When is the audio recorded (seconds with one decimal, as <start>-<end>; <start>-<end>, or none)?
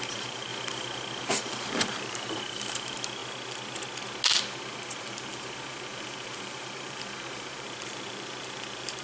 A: 0.5-1.3; 3.2-5.0